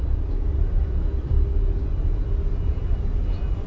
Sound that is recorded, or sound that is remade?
recorded